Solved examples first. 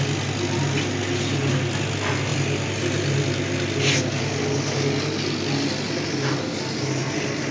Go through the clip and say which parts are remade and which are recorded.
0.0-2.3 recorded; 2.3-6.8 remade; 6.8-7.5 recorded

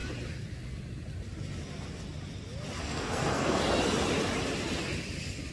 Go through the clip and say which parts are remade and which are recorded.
0.0-2.8 recorded; 2.8-3.6 remade; 3.6-5.5 recorded

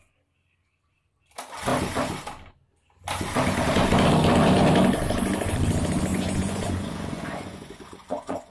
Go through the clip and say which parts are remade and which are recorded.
0.0-6.1 recorded; 6.1-8.5 remade

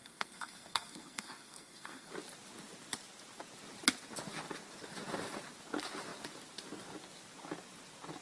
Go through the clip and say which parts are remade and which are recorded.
0.0-2.1 remade; 2.1-8.2 recorded

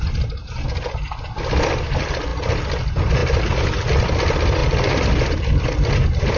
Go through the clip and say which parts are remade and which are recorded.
0.0-6.4 recorded

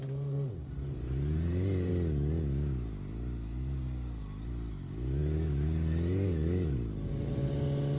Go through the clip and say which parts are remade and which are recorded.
0.0-1.9 remade; 1.9-5.2 recorded; 5.2-7.4 remade; 7.4-8.0 recorded

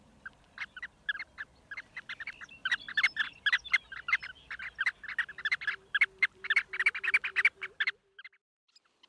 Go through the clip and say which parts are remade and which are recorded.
0.0-9.1 remade

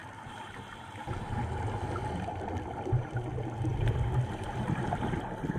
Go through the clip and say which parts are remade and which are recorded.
0.0-5.6 recorded